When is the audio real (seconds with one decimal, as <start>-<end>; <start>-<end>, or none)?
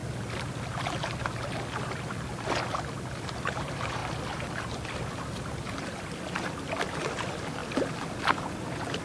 0.0-3.5; 7.6-8.5